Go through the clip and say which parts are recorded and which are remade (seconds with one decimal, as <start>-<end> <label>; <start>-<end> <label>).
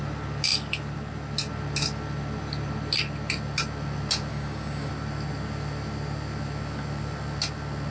0.0-4.3 recorded; 4.3-4.9 remade; 4.9-7.9 recorded